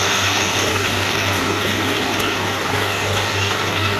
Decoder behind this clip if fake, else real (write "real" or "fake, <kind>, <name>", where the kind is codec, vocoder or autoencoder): fake, codec, DAC